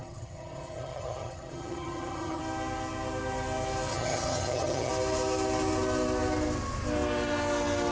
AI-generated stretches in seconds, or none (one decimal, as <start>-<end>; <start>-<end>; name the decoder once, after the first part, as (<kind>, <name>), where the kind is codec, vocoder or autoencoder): 0.0-2.4 (vocoder, HiFi-GAN); 3.9-4.9